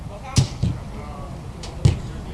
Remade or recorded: recorded